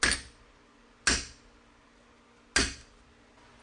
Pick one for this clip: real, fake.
real